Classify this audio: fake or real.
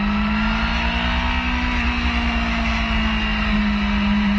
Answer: real